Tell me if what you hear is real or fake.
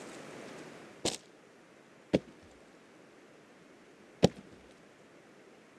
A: real